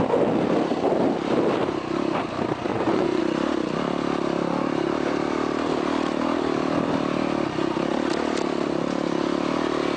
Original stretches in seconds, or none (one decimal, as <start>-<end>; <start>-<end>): 0.0-2.7; 3.2-10.0